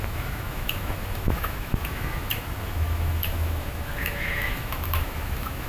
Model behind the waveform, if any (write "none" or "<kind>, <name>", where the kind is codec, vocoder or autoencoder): autoencoder, DAC-VAE